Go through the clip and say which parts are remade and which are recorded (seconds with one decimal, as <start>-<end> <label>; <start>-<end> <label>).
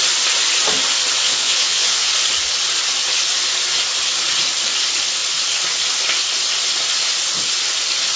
0.0-1.2 recorded; 1.2-2.1 remade; 2.1-8.2 recorded